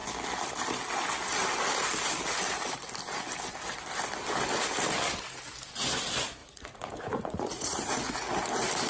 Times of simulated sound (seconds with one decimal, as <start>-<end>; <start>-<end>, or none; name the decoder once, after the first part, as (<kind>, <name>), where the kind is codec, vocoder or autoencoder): 6.4-7.9 (vocoder, Vocos)